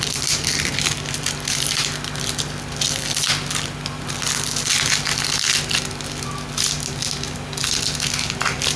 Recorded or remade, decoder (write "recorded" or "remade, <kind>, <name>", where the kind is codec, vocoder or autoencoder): recorded